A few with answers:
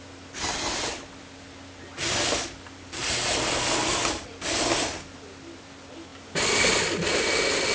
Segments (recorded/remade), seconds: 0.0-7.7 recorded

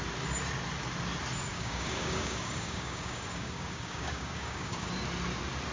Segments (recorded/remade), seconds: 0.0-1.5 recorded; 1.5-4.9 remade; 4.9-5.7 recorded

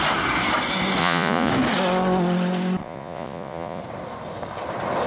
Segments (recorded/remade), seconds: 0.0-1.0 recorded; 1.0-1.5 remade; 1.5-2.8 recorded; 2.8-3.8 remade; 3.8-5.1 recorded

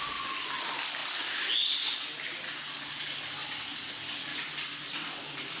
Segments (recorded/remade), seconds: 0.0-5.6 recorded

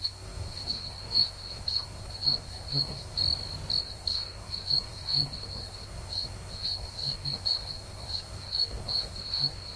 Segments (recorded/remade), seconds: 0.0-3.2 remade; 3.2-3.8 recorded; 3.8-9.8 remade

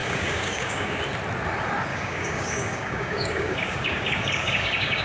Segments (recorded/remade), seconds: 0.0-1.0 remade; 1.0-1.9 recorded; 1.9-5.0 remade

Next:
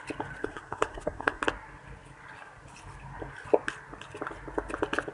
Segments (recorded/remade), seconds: 0.0-0.4 recorded; 0.4-1.4 remade; 1.4-5.1 recorded

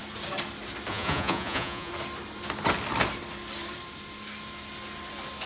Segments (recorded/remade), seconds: 0.0-0.9 recorded; 0.9-1.9 remade; 1.9-5.5 recorded